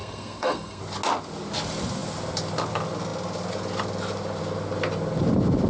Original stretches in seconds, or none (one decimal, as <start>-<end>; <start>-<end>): 0.8-5.7